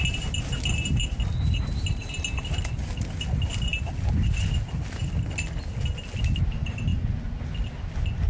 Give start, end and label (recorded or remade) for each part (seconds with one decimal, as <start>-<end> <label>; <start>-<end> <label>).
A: 0.0-8.3 recorded